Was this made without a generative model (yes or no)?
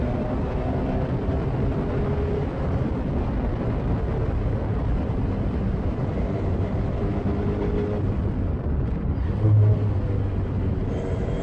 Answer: yes